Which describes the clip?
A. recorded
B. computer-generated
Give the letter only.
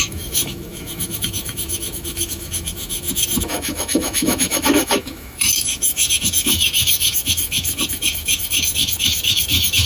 B